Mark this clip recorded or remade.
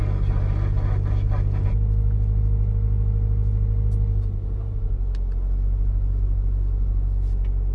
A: recorded